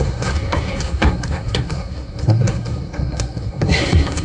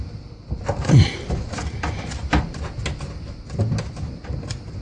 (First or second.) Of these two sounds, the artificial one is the first